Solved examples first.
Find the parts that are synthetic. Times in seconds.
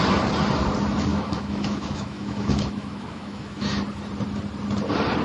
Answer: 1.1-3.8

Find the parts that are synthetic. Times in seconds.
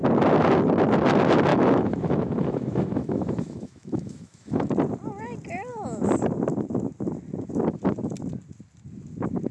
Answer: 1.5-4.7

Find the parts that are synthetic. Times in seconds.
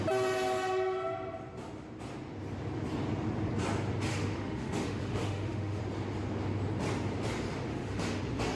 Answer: 4.1-5.8; 7.7-8.2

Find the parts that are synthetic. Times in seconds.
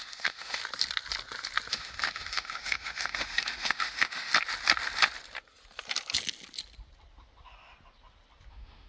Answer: 0.0-0.6; 1.7-4.3; 8.5-8.9